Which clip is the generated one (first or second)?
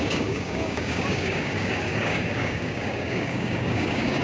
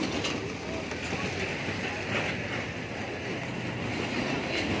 first